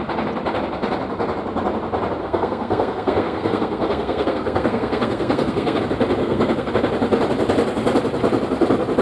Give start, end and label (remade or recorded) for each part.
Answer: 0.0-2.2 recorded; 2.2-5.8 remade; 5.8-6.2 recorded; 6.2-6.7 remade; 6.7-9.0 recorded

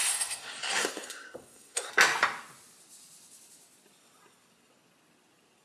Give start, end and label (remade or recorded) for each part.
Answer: 0.0-1.9 remade; 1.9-5.6 recorded